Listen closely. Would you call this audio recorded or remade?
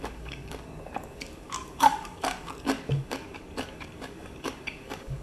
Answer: remade